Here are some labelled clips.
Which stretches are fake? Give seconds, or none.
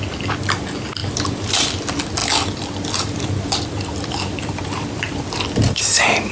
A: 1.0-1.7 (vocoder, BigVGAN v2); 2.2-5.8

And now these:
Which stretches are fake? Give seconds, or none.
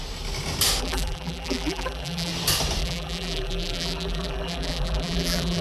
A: 0.8-2.3 (vocoder, BigVGAN v2); 2.8-5.6